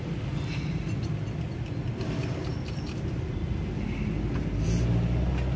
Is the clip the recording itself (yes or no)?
yes